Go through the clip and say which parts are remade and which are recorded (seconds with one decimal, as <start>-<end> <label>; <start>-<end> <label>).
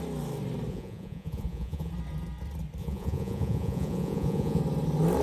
0.0-0.7 recorded; 0.7-1.9 remade; 1.9-2.8 recorded; 2.8-4.6 remade; 4.6-5.2 recorded